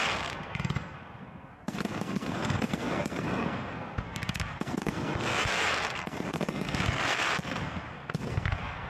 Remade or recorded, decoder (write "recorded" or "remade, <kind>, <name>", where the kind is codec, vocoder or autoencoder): remade, codec, SNAC